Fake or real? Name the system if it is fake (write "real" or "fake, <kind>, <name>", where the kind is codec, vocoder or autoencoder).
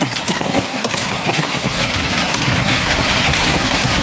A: fake, codec, SNAC